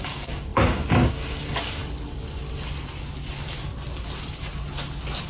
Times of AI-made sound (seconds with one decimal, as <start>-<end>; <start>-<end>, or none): 0.0-1.8